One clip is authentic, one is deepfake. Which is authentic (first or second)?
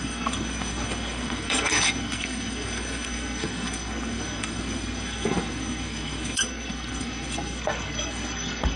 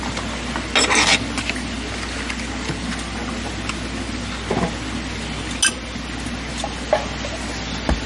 second